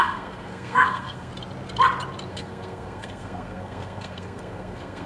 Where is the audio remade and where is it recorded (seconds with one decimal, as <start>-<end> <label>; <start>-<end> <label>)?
0.0-1.3 remade; 1.3-2.3 recorded; 2.3-5.1 remade